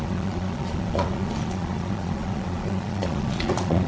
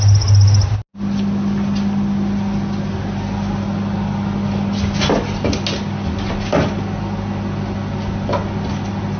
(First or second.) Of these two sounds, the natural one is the second